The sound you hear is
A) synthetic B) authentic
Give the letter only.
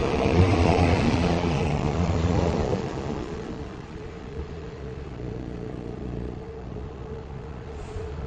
A